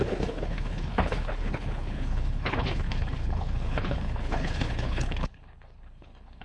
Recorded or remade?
remade